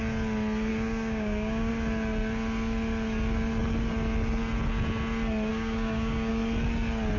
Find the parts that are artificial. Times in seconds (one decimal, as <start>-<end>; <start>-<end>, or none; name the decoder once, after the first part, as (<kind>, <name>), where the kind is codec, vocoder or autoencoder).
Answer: 0.7-1.7 (codec, DAC); 5.5-6.3